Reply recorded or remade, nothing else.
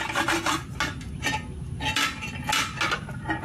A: recorded